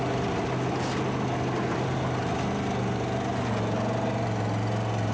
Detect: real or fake real